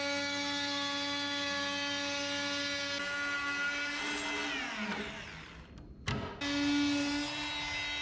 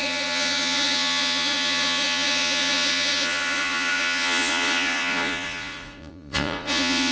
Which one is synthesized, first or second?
second